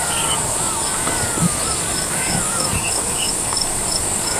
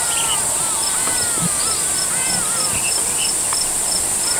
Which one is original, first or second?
second